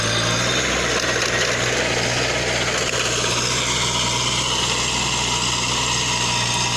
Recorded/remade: recorded